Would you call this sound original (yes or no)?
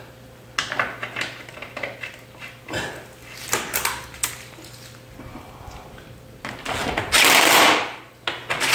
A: yes